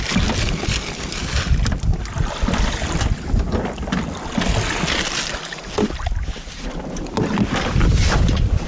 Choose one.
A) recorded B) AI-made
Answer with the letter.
A